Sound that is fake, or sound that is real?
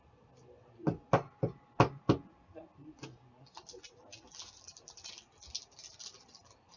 real